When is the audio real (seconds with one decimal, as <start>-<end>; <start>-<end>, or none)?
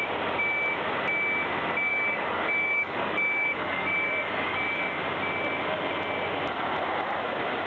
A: 0.0-1.9; 5.0-7.7